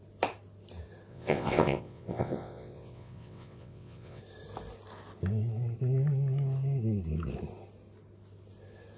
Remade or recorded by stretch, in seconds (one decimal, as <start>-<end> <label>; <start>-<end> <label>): 0.0-1.1 recorded; 1.1-4.2 remade; 4.2-9.0 recorded